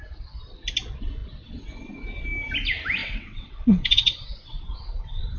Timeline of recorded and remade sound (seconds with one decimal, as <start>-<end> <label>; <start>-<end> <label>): 0.0-3.0 recorded; 3.0-5.4 remade